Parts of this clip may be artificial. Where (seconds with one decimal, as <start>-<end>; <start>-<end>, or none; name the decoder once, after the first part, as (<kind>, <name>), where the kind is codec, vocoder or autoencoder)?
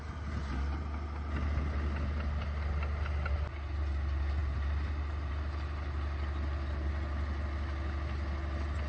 none